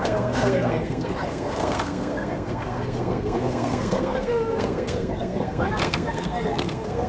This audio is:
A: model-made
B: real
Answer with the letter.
A